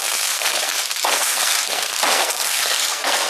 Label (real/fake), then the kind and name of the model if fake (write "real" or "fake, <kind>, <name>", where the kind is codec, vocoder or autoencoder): fake, codec, SNAC